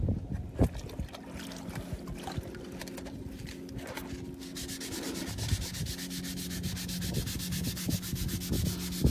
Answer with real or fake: real